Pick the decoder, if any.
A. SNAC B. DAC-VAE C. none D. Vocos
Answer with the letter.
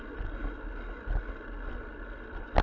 C